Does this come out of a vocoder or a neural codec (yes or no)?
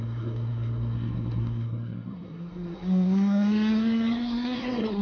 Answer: yes